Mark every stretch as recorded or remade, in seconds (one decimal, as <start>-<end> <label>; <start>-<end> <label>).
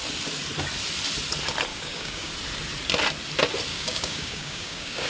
0.0-1.7 recorded; 1.7-2.3 remade; 2.3-3.7 recorded; 3.7-5.1 remade